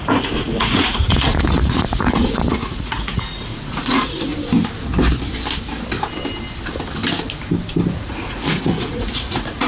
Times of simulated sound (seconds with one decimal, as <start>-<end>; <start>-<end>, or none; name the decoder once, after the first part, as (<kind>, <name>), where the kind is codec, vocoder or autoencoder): 0.0-4.3 (vocoder, Vocos); 7.9-9.7